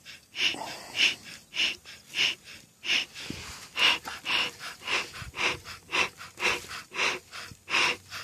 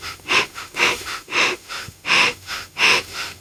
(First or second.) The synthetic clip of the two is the second